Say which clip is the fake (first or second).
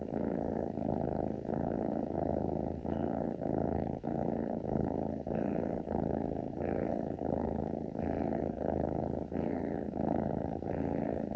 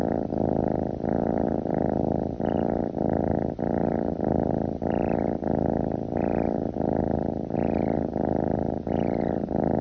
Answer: first